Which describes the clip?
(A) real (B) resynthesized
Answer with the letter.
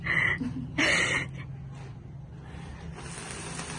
A